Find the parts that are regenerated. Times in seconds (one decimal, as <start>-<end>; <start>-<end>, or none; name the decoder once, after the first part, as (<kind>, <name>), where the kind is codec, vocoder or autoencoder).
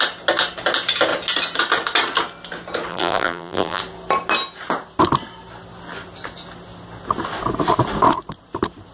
2.9-3.8 (vocoder, BigVGAN v2)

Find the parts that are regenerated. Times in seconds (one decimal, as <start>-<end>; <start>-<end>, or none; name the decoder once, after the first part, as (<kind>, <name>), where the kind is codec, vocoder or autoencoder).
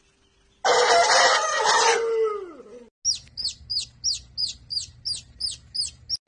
none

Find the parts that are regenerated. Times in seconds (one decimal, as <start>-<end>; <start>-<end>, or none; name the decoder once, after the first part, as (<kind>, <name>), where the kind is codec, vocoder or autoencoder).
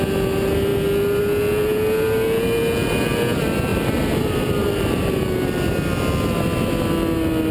3.7-5.1 (vocoder, BigVGAN v2)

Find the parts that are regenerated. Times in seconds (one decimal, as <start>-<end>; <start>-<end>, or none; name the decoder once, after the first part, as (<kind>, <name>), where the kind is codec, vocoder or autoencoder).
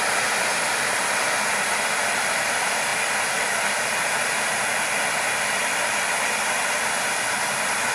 none